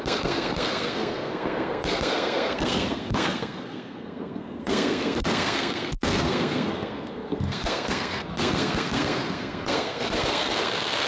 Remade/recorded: remade